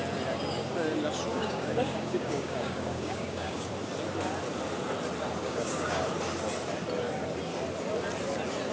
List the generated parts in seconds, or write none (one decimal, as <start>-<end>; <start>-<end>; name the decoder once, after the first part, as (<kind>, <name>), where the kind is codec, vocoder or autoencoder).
1.3-3.7 (codec, DAC); 5.4-6.0